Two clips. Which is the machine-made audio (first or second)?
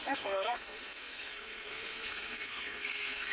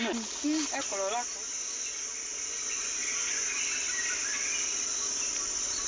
first